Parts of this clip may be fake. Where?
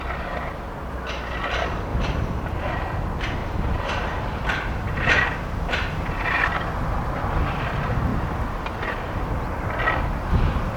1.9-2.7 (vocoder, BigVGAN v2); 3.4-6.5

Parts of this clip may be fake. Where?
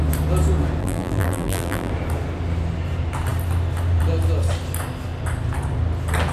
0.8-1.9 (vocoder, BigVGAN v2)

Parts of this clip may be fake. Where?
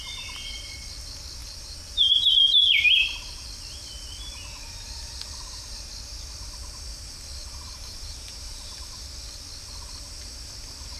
1.4-2.3 (vocoder, BigVGAN v2); 7.4-8.8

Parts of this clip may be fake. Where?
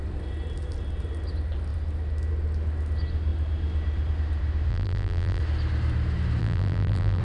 4.7-5.4 (vocoder, BigVGAN v2); 6.4-7.2